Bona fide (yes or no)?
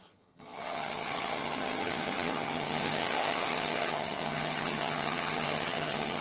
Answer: no